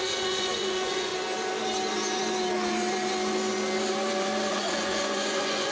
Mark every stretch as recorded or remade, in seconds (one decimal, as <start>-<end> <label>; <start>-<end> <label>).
0.0-1.1 remade; 1.1-4.5 recorded; 4.5-5.7 remade